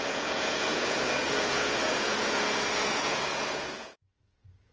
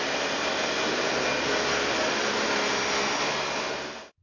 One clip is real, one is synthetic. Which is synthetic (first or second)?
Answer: first